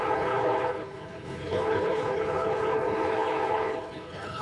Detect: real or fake fake